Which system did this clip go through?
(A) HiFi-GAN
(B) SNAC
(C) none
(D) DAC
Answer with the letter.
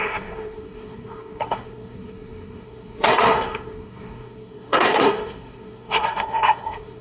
B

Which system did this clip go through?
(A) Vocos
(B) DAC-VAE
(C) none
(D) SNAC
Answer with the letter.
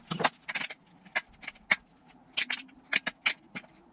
C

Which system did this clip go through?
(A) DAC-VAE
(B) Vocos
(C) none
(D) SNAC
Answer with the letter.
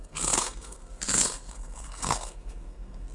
D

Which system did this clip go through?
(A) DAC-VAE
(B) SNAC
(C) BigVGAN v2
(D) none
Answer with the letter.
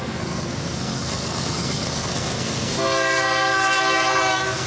B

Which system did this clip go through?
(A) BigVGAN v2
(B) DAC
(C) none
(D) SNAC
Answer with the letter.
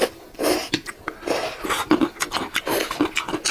C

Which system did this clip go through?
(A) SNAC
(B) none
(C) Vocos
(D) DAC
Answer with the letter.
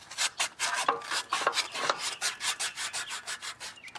B